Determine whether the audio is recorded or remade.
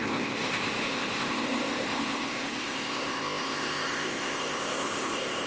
remade